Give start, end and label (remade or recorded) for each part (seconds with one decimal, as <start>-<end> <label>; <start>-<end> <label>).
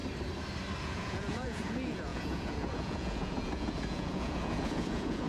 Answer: 0.0-0.8 recorded; 0.8-5.3 remade